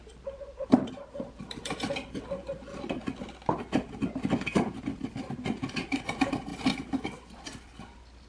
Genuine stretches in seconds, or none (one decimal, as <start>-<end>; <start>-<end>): 0.0-8.3